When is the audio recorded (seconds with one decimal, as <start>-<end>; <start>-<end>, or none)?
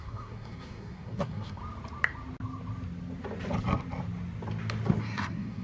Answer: 1.6-5.0